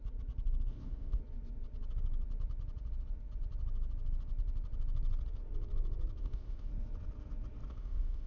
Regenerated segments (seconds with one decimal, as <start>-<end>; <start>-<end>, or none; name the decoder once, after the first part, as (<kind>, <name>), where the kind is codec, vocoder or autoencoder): 0.7-1.2 (codec, ZipCodec); 6.2-6.7; 7.7-8.3